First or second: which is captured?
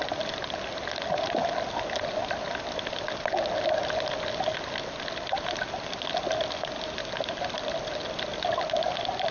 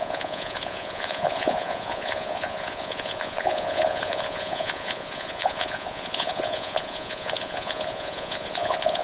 first